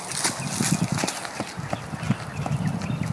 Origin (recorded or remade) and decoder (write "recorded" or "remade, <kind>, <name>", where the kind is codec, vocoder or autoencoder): recorded